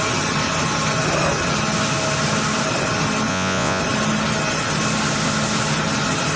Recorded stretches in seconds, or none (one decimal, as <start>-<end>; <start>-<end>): 0.0-3.3; 3.8-6.4